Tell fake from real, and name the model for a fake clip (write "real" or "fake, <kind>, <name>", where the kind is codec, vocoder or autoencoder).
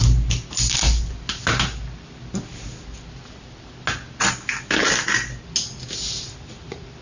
real